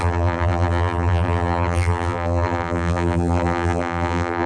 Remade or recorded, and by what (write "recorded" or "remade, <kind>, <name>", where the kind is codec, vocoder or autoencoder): remade, vocoder, BigVGAN v2